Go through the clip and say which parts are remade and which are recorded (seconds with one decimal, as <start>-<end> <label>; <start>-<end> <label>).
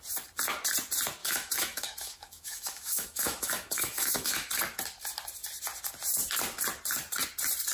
0.0-1.2 recorded; 1.2-4.5 remade; 4.5-7.7 recorded